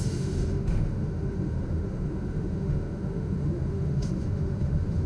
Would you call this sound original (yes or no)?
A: no